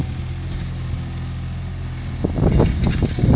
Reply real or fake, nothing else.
real